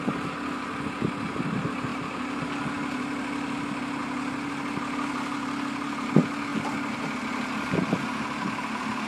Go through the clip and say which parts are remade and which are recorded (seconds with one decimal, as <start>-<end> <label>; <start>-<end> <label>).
0.0-9.1 recorded